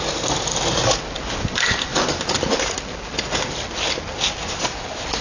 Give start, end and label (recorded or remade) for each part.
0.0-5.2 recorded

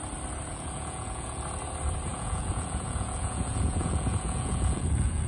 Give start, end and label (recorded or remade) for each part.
0.0-0.5 recorded; 0.5-1.4 remade; 1.4-2.1 recorded; 2.1-5.3 remade

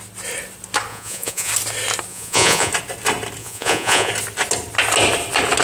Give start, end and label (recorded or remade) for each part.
0.0-0.9 recorded; 0.9-1.5 remade; 1.5-2.1 recorded; 2.1-2.7 remade; 2.7-3.4 recorded; 3.4-4.1 remade; 4.1-5.6 recorded

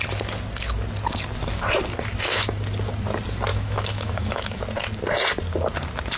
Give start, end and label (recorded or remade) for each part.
0.0-3.5 recorded; 3.5-4.6 remade; 4.6-6.2 recorded

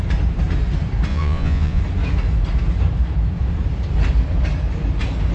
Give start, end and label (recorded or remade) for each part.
0.0-1.1 recorded; 1.1-1.8 remade; 1.8-5.3 recorded

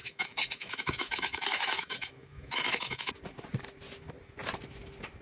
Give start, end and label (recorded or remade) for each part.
0.0-3.1 remade; 3.1-5.2 recorded